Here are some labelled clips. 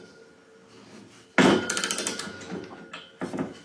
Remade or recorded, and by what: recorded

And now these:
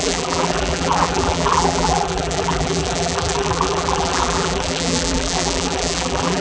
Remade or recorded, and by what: remade, vocoder, BigVGAN v2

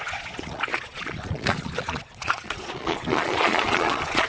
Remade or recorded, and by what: remade, vocoder, Vocos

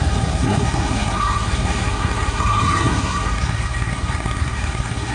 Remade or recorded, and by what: remade, codec, SNAC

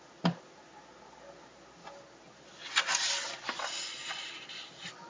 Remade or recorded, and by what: recorded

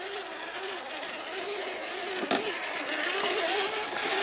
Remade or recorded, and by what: recorded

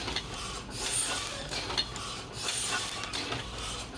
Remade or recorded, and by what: recorded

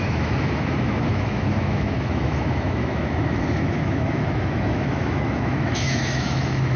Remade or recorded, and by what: remade, autoencoder, DAC-VAE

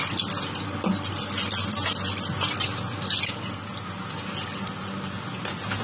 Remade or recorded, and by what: recorded